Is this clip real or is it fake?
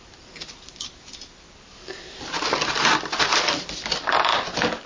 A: real